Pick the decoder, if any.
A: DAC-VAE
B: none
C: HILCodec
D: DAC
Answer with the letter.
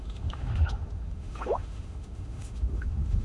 A